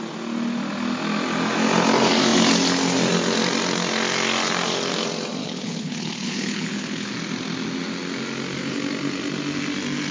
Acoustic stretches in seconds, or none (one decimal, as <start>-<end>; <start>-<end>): 0.0-5.4; 7.1-10.1